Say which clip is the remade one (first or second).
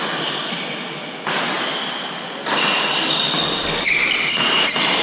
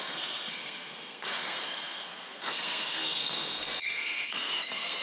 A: second